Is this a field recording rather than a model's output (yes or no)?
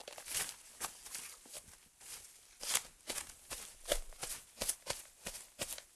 yes